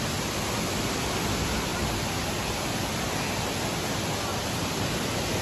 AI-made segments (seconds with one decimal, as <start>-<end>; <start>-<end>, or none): 4.3-5.4